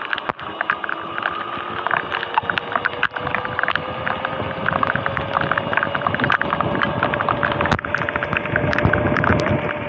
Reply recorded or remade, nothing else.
recorded